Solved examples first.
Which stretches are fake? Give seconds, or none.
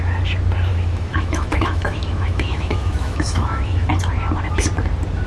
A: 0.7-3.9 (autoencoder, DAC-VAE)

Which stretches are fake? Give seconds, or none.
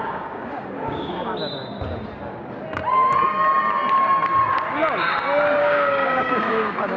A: 0.0-1.4 (codec, DAC); 5.6-7.0